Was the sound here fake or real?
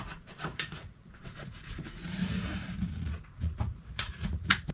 fake